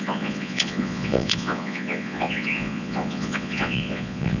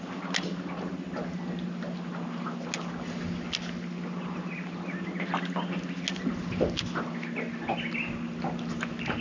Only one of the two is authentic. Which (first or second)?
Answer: second